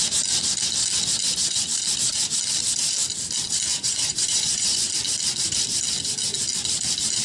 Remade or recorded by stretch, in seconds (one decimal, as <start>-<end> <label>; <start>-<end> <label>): 0.0-3.7 recorded; 3.7-4.9 remade; 4.9-7.2 recorded

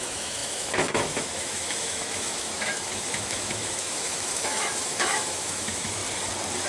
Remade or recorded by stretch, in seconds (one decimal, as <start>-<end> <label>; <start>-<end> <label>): 0.0-6.0 remade; 6.0-6.7 recorded

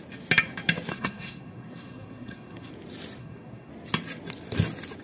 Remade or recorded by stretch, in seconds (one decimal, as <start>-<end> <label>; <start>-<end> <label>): 0.0-0.9 recorded; 0.9-2.7 remade; 2.7-3.2 recorded; 3.2-3.7 remade; 3.7-5.0 recorded